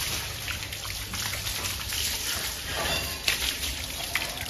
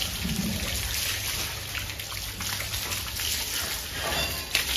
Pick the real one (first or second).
second